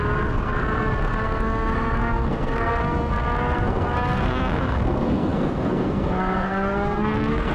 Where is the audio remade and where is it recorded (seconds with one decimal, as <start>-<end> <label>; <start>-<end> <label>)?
0.0-7.5 remade